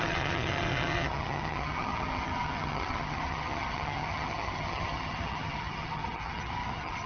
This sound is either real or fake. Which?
fake